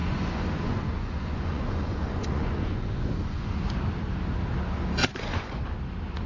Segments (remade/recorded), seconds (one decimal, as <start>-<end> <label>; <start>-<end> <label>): 0.0-3.7 remade; 3.7-5.0 recorded; 5.0-5.6 remade; 5.6-6.3 recorded